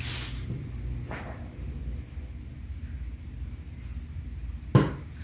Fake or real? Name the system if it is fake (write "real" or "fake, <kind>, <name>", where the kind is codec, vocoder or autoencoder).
real